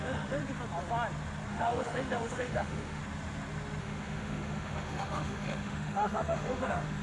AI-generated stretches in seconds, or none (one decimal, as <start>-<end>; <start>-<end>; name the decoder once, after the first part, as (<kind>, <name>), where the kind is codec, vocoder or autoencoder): 0.0-0.4 (autoencoder, DAC-VAE); 1.5-3.0; 3.8-7.0